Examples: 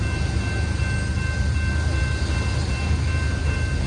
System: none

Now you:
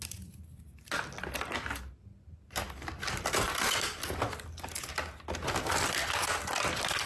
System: none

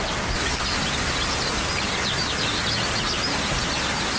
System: none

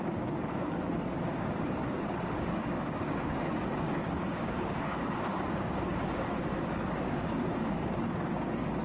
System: codec, DAC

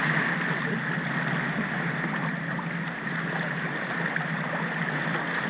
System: none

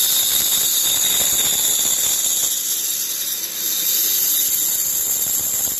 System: none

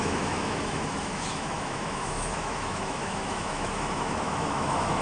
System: autoencoder, DAC-VAE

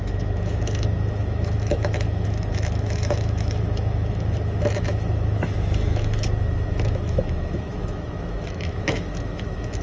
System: autoencoder, DAC-VAE